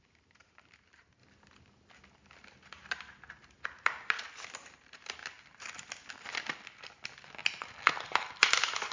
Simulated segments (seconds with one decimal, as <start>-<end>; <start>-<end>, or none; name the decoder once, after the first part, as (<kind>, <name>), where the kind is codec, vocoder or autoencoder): 0.0-1.2 (vocoder, BigVGAN v2); 4.1-5.2; 8.0-8.9